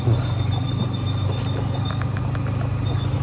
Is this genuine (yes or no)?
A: yes